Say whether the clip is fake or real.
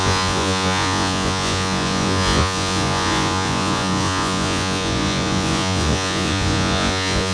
fake